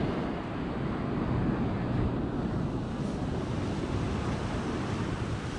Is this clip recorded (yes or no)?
yes